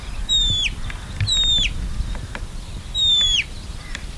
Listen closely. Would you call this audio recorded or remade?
recorded